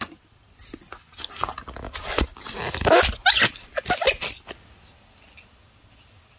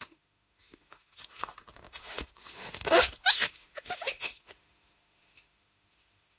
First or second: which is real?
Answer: first